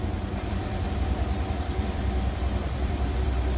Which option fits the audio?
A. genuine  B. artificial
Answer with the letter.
B